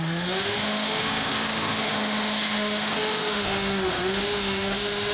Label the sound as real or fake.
fake